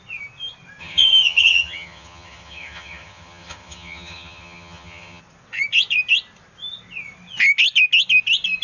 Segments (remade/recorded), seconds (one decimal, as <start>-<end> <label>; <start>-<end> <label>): 0.0-0.8 recorded; 0.8-5.2 remade; 5.2-8.6 recorded